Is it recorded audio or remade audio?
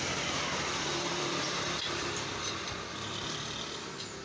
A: remade